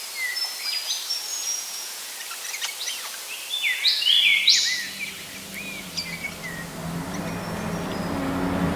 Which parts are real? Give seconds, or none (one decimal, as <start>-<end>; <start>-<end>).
0.0-1.3; 2.1-8.8